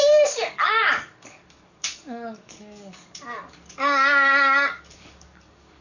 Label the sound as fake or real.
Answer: fake